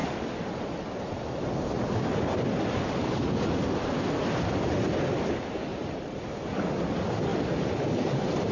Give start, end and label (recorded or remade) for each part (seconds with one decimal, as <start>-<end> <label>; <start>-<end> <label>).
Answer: 0.0-5.7 recorded; 5.7-6.7 remade; 6.7-8.5 recorded